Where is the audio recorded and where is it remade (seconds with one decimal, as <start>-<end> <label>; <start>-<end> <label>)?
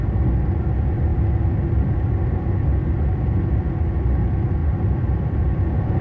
0.0-6.0 recorded